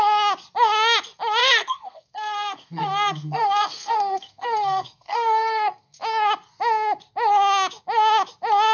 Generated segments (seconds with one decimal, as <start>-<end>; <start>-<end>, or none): 1.4-6.0